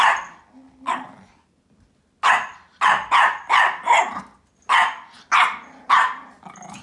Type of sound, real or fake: real